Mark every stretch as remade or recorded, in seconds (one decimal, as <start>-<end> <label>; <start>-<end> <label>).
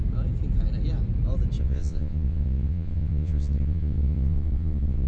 0.0-1.6 recorded; 1.6-5.1 remade